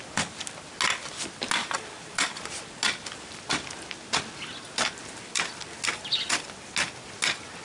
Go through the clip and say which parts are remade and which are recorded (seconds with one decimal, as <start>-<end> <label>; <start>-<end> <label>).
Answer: 0.0-1.6 recorded; 1.6-2.5 remade; 2.5-7.6 recorded